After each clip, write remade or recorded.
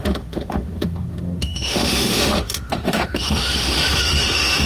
remade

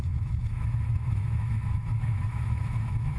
remade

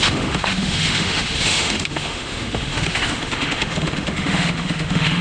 remade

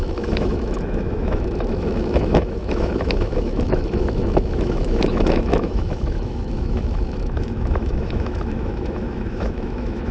remade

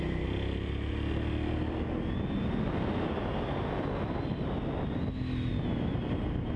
recorded